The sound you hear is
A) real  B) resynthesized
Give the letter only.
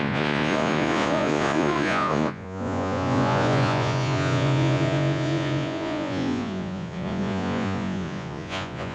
B